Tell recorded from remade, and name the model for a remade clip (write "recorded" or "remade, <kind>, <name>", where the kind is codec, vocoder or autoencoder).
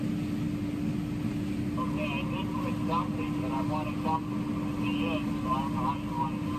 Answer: recorded